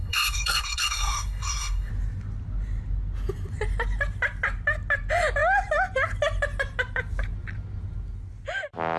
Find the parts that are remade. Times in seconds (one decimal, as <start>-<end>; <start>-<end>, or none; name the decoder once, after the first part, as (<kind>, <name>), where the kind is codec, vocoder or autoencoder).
0.0-1.9 (codec, SNAC)